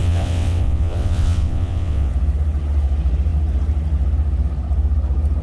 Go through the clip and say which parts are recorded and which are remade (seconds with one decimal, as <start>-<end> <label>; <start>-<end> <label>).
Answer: 0.0-2.1 remade; 2.1-5.4 recorded